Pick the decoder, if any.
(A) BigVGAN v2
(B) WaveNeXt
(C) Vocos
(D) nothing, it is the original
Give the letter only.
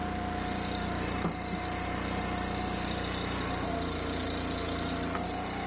A